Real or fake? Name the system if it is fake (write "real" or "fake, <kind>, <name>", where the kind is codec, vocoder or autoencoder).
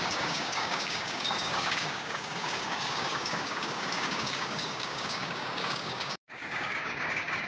fake, codec, DAC